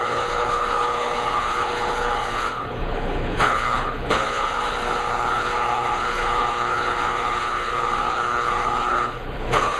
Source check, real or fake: fake